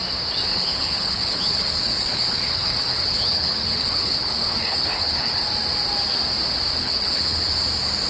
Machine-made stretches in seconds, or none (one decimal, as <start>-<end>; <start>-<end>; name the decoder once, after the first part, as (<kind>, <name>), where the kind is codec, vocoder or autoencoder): 0.5-5.4 (codec, HILCodec); 6.8-7.6